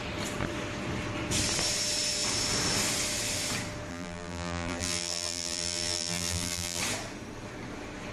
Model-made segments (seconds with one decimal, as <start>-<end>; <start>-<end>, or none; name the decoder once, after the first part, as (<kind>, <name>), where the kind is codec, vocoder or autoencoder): 3.9-6.8 (vocoder, BigVGAN v2)